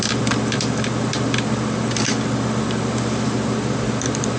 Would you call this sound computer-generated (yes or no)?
yes